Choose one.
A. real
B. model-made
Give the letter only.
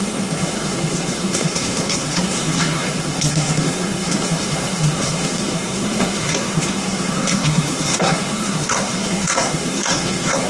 B